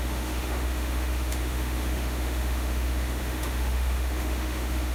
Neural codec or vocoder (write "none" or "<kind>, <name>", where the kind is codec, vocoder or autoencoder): autoencoder, DAC-VAE